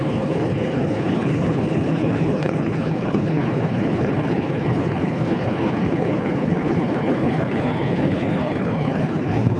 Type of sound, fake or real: fake